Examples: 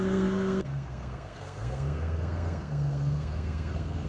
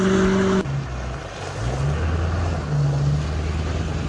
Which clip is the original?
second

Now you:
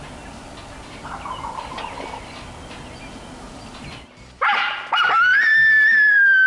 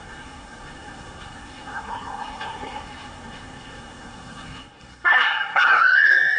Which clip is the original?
first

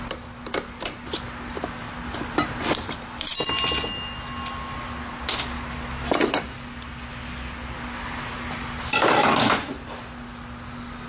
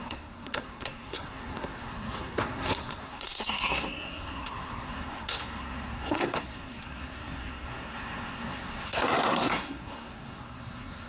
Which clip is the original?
first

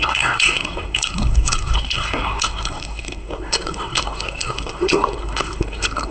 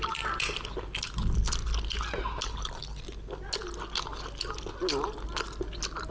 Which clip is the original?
second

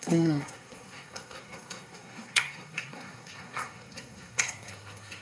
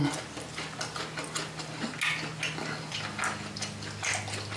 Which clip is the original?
second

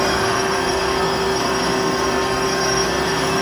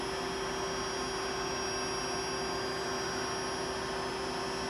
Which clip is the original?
second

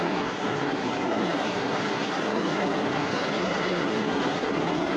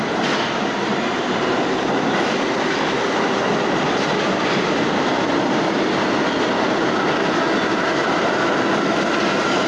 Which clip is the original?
second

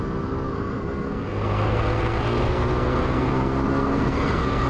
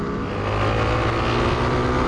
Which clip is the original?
second